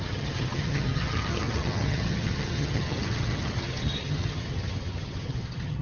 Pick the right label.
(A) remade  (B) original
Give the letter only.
A